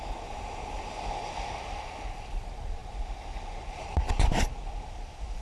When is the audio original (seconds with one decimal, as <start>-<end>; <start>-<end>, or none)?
0.0-5.4

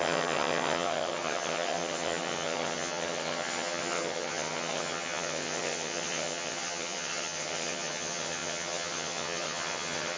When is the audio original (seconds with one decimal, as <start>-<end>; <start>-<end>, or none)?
none

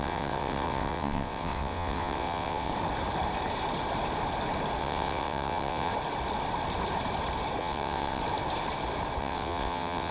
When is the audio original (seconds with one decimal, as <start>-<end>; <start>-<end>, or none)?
2.7-4.8; 5.9-7.6; 8.2-9.2

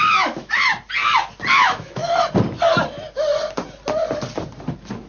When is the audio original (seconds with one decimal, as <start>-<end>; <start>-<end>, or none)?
0.7-1.5; 2.0-5.1

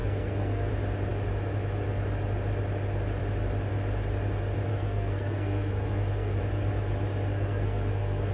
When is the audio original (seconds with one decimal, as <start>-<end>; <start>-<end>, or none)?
0.7-4.7; 6.4-7.3